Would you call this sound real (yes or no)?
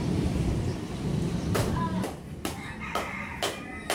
yes